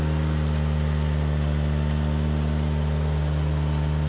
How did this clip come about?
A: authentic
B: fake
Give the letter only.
A